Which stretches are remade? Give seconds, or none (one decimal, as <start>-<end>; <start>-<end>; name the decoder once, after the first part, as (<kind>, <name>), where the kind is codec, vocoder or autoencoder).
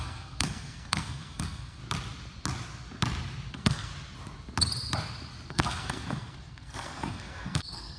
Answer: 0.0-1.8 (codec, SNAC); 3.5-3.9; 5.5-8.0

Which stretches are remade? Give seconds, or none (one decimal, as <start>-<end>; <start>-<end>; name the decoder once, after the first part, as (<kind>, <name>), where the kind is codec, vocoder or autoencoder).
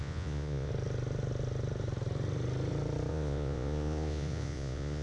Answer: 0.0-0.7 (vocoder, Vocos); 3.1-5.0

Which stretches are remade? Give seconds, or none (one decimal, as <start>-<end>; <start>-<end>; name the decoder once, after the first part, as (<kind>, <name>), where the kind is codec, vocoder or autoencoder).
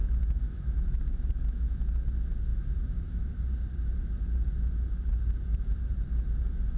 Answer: 0.0-1.8 (autoencoder, DAC-VAE); 2.5-3.4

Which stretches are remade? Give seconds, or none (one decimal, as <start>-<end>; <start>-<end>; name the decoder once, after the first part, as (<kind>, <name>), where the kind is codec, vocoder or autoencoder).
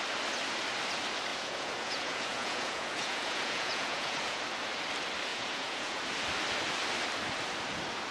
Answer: 1.3-4.4 (vocoder, Vocos); 5.3-6.0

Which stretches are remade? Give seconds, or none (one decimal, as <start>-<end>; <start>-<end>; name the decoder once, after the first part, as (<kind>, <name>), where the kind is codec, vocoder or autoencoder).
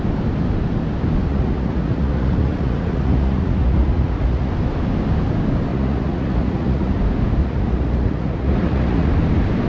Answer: 1.3-4.5 (vocoder, Vocos); 5.7-6.9; 7.4-9.1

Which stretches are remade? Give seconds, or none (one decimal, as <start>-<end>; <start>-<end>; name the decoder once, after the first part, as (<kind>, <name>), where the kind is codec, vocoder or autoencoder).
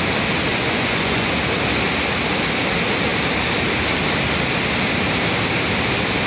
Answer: 0.5-1.3 (vocoder, Vocos)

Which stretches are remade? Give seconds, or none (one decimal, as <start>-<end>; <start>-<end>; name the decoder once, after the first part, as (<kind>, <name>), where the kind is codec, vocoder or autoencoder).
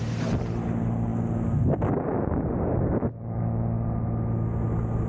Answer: none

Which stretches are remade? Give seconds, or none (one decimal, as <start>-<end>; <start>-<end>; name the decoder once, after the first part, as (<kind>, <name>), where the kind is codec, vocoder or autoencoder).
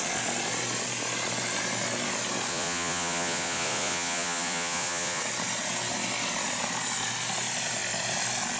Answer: 2.5-5.2 (vocoder, Vocos)